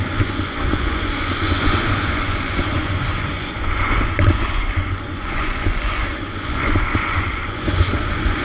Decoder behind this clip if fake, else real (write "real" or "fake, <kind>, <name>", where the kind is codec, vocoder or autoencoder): fake, vocoder, Vocos